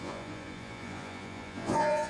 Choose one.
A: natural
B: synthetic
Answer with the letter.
B